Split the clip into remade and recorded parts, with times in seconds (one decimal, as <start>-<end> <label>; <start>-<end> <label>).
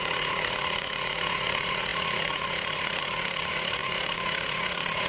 0.0-5.1 remade